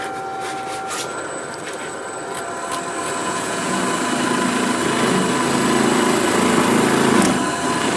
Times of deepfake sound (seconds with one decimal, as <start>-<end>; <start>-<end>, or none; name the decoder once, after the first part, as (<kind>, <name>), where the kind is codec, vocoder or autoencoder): 3.2-3.8 (vocoder, Vocos)